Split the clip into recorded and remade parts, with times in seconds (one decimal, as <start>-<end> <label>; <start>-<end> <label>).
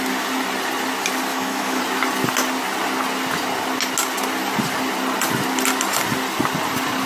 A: 0.0-1.3 recorded; 1.3-1.8 remade; 1.8-7.1 recorded